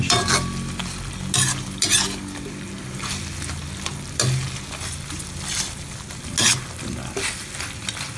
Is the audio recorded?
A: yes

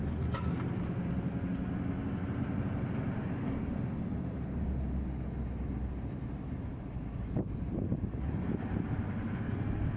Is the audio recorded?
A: yes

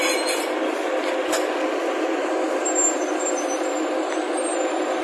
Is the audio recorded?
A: yes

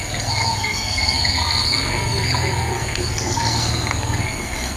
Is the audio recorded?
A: no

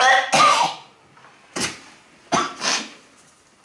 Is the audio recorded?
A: yes